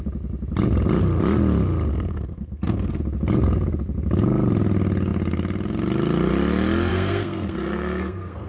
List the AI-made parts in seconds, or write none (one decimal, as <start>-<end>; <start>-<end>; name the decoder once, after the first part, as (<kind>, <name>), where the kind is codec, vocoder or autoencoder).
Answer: 1.9-3.0 (codec, SNAC); 6.9-8.5